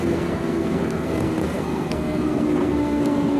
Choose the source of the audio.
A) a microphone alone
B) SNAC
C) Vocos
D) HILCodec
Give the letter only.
B